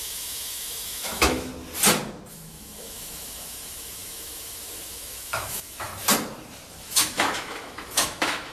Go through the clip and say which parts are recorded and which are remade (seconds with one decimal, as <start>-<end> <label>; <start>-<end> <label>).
0.0-1.5 remade; 1.5-2.3 recorded; 2.3-5.9 remade; 5.9-6.7 recorded; 6.7-8.5 remade